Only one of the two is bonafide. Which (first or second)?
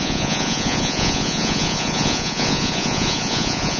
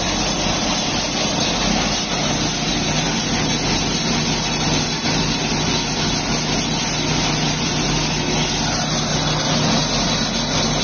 second